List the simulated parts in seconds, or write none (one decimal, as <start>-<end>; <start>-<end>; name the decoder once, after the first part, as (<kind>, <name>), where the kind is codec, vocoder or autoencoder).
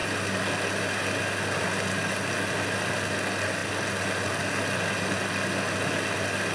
none